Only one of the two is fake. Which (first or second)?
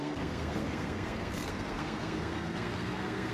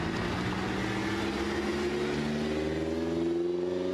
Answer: first